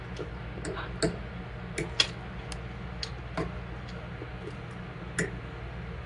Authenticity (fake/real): real